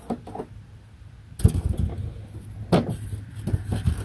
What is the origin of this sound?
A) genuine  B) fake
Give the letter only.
A